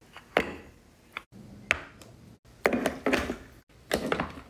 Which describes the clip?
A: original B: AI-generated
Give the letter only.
A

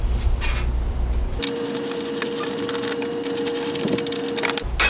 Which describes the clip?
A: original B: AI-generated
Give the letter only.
A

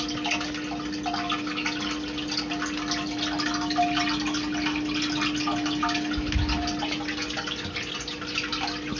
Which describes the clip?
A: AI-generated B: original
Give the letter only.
B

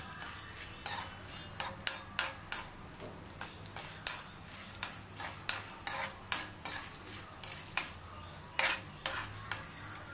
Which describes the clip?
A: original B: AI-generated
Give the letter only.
A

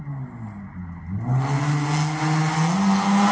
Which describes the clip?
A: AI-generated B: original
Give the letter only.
B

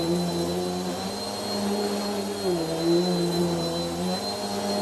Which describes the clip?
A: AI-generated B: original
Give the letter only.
B